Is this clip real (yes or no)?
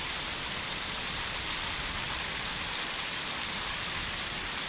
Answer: yes